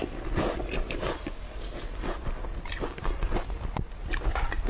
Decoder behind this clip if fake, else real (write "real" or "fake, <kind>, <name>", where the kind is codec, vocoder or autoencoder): real